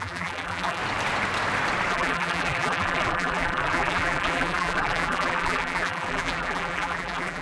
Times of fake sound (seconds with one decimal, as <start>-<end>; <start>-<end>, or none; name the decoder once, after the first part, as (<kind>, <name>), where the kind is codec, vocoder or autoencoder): 0.0-0.8 (vocoder, BigVGAN v2); 1.9-7.4